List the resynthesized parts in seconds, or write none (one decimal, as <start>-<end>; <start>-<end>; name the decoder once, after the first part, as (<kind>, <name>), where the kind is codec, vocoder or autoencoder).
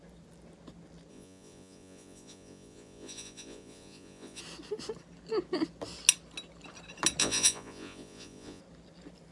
1.1-4.4 (vocoder, Vocos); 7.2-8.6